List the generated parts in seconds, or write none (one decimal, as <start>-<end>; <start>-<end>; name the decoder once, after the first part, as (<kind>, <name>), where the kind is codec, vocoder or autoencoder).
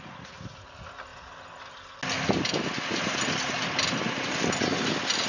none